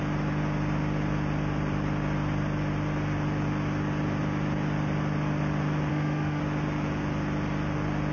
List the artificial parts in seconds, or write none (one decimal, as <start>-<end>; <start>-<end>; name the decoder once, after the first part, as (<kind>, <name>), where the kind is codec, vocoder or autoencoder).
5.9-6.4 (autoencoder, DAC-VAE)